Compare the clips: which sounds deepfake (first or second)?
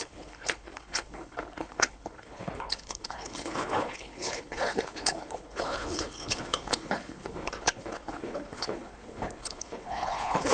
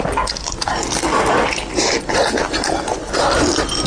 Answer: first